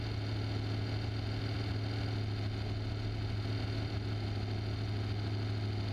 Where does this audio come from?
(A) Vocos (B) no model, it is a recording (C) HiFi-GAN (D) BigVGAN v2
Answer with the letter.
B